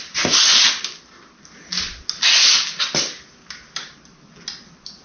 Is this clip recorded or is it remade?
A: recorded